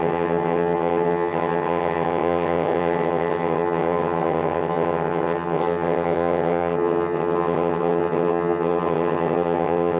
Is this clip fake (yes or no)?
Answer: yes